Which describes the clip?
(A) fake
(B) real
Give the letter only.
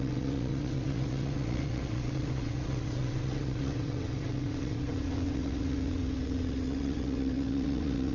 A